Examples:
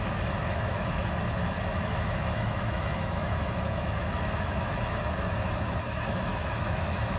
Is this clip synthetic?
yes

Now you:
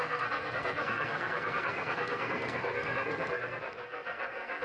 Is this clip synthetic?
yes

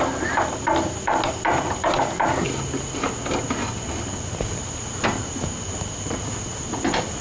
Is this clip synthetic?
no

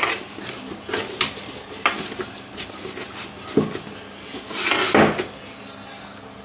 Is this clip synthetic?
no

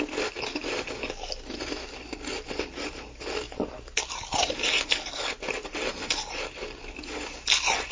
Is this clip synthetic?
no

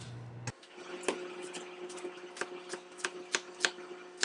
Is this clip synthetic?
no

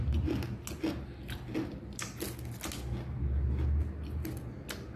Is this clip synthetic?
no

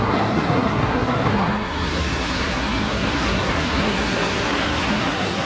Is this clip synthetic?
yes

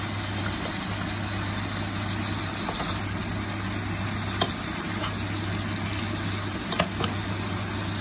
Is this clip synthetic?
no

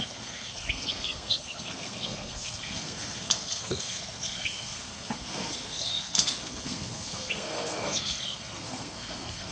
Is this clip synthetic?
yes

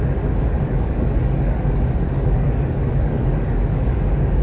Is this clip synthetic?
yes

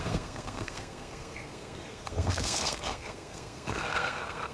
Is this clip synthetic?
yes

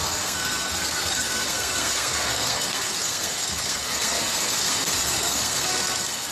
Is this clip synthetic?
yes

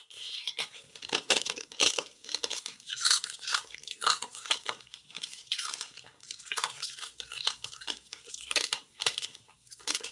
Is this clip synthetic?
yes